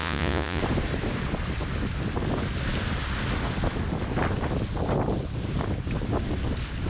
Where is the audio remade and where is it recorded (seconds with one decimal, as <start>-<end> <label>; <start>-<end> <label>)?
0.0-0.6 remade; 0.6-6.9 recorded